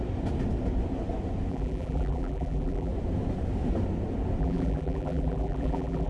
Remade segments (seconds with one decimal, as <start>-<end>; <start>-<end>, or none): 1.5-2.9; 4.4-6.1